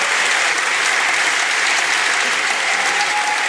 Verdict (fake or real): real